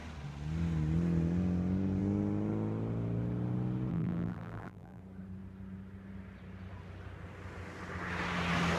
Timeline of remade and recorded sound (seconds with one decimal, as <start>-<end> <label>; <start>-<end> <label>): 0.0-3.9 recorded; 3.9-5.0 remade; 5.0-8.8 recorded